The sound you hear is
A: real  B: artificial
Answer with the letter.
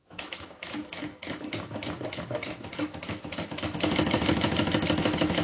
B